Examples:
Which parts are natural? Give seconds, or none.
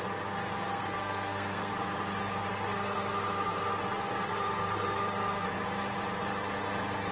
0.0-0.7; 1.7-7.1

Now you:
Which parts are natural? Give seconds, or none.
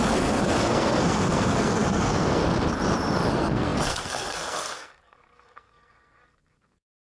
2.4-3.3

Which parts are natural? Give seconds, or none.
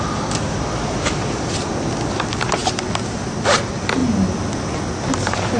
0.0-5.6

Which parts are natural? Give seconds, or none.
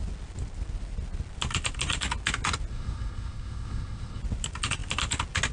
0.0-2.7; 4.2-5.5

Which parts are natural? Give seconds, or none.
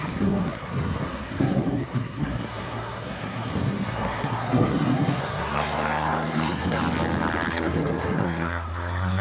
6.8-7.5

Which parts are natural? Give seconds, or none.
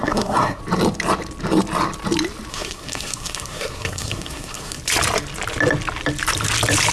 0.6-2.5; 4.8-6.9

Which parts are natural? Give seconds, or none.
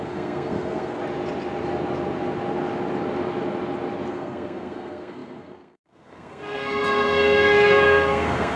1.0-4.1